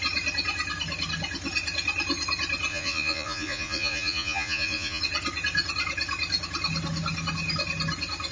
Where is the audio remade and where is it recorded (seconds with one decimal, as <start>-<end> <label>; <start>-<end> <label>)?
0.0-2.7 recorded; 2.7-5.0 remade; 5.0-8.3 recorded

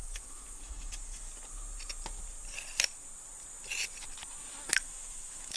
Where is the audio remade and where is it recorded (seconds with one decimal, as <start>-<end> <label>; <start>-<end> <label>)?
0.0-1.3 remade; 1.3-4.7 recorded; 4.7-5.6 remade